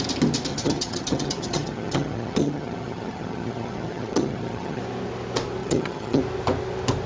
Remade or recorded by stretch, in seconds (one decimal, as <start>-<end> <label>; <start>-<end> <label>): 0.0-0.5 recorded; 0.5-4.8 remade; 4.8-5.6 recorded; 5.6-6.2 remade; 6.2-7.1 recorded